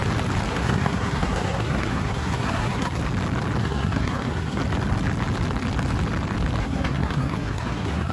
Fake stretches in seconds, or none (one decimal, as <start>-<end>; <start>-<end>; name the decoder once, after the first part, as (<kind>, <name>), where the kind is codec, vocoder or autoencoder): 0.5-3.0 (codec, SNAC); 3.6-4.6; 6.6-8.1